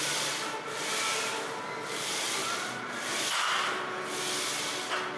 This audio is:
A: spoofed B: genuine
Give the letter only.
B